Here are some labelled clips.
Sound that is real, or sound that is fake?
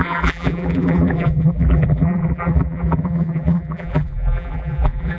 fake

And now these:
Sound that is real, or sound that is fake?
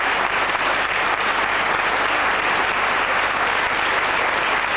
real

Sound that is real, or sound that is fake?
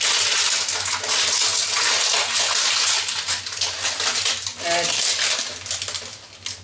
real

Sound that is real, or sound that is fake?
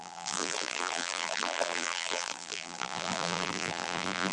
fake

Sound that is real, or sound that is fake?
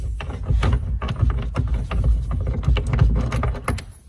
real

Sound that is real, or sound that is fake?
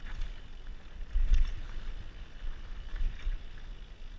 real